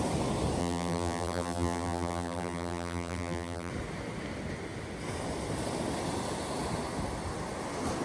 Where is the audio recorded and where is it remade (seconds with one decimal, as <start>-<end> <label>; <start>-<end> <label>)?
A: 0.0-0.6 recorded; 0.6-3.7 remade; 3.7-8.0 recorded